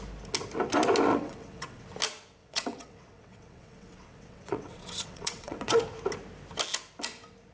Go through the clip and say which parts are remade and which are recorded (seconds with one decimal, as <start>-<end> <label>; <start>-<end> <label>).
0.0-1.1 recorded; 1.1-1.8 remade; 1.8-2.4 recorded; 2.4-5.8 remade; 5.8-7.5 recorded